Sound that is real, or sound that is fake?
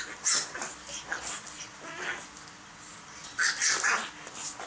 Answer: real